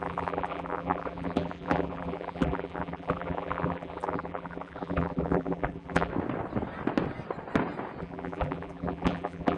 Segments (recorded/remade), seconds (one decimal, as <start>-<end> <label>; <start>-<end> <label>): 0.0-6.1 remade; 6.1-8.0 recorded; 8.0-9.6 remade